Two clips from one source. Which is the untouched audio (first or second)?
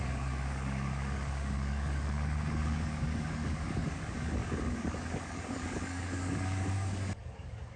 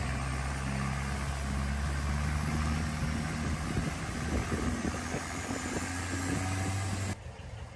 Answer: second